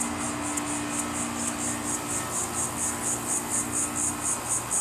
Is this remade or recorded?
recorded